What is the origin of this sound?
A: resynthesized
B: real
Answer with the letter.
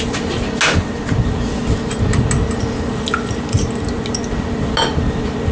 B